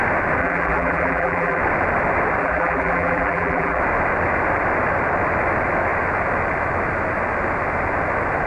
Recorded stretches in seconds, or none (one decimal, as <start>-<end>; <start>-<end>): 0.0-0.4; 1.6-2.4; 3.8-8.5